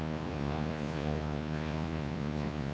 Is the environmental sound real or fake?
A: fake